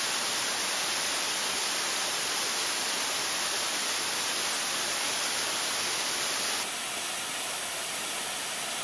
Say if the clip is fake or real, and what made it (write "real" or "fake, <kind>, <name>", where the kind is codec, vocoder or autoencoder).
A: real